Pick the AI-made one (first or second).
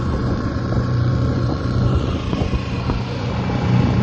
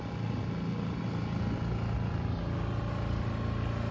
first